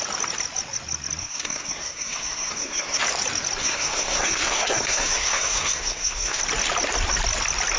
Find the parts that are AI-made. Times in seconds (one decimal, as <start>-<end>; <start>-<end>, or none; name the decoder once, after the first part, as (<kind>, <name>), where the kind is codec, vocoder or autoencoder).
1.2-3.0 (codec, SNAC); 3.6-6.4